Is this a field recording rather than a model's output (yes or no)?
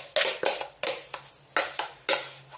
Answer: yes